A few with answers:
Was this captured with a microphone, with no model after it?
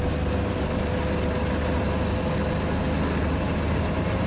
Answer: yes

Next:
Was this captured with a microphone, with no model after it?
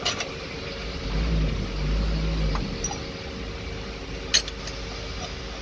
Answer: yes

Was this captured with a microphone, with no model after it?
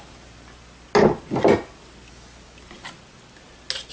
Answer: yes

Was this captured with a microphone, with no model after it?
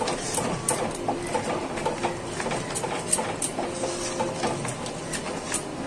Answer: yes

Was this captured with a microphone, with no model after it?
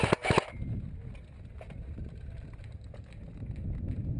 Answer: yes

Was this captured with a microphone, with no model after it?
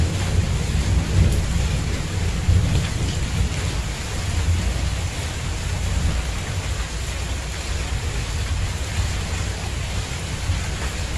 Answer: yes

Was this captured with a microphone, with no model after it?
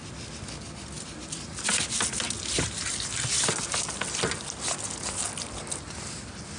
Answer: yes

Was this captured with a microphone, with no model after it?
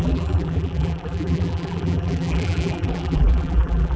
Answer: no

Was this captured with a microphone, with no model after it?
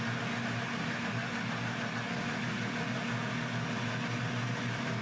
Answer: yes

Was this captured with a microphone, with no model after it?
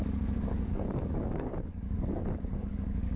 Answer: no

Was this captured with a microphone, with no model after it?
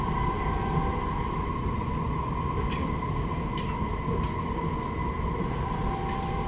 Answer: yes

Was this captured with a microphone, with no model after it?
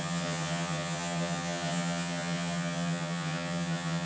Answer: no